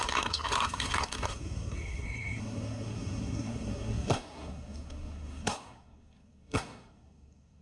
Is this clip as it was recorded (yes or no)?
no